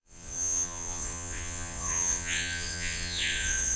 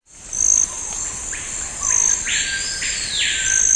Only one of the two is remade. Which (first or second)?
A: first